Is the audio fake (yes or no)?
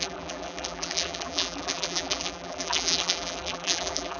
yes